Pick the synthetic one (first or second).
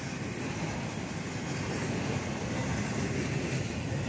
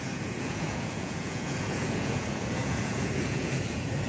second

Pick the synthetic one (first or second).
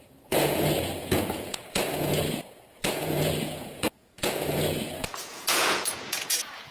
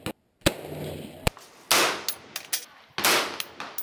first